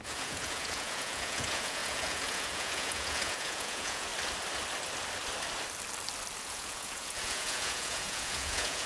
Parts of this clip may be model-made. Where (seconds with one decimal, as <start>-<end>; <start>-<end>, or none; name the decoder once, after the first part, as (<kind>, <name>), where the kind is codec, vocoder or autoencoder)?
0.0-4.1 (vocoder, Vocos); 6.4-8.9